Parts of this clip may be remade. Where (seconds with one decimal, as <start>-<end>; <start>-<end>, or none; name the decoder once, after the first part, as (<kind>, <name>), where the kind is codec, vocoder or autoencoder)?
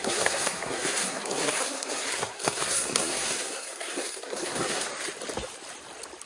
0.0-4.9 (codec, SNAC)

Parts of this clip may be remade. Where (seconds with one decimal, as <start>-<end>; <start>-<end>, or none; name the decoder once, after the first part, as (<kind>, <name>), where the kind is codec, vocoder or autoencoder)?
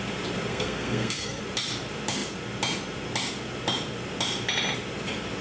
0.5-1.4 (codec, SNAC)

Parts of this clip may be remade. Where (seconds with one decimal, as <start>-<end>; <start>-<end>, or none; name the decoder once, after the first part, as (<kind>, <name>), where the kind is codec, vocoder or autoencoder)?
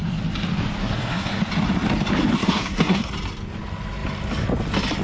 0.8-1.4 (codec, SNAC); 2.4-3.1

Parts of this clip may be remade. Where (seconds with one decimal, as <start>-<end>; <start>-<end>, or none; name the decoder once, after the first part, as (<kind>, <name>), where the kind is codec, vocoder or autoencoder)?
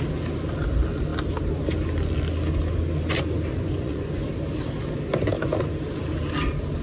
3.5-4.2 (vocoder, Vocos)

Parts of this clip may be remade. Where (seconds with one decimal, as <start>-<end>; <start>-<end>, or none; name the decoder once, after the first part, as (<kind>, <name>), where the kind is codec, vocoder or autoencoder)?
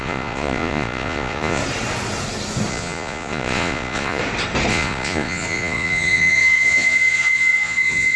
0.0-1.6 (vocoder, Vocos); 2.7-4.2; 4.7-8.2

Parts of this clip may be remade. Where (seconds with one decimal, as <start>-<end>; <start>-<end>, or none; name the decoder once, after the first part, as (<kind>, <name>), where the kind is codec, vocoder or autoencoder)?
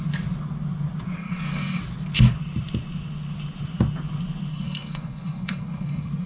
1.2-1.8 (codec, SNAC); 4.5-6.3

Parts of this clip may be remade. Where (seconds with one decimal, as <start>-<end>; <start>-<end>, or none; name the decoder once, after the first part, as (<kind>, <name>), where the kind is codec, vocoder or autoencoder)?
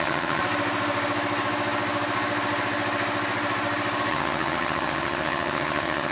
0.0-0.4 (vocoder, HiFi-GAN); 4.1-6.1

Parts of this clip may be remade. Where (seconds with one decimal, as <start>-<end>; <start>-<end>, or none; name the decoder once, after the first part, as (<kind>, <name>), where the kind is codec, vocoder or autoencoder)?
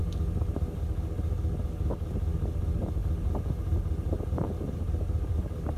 2.6-3.0 (vocoder, BigVGAN v2); 3.8-5.8